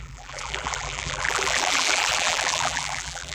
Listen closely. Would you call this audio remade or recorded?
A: remade